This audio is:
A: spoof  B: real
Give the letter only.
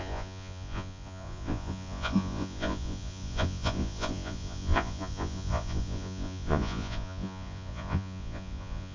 A